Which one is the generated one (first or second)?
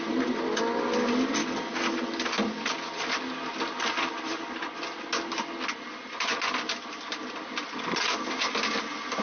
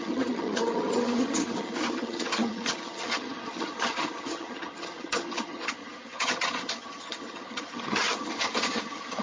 second